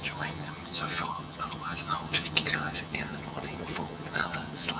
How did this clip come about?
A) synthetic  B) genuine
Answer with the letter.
A